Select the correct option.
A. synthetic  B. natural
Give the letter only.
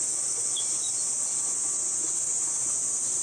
B